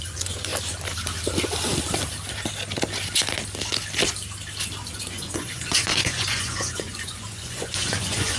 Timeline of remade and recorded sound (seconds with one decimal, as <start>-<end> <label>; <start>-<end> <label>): 0.0-0.5 remade; 0.5-4.9 recorded; 4.9-8.4 remade